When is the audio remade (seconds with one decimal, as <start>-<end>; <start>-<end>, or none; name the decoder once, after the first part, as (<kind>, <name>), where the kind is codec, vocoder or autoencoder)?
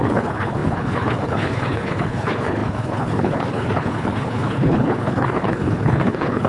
0.0-6.5 (codec, HILCodec)